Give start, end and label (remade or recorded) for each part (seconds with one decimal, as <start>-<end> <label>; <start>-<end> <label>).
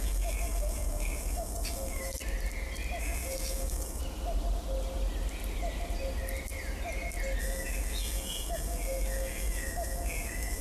0.0-2.2 remade; 2.2-3.0 recorded; 3.0-4.0 remade; 4.0-7.4 recorded; 7.4-10.6 remade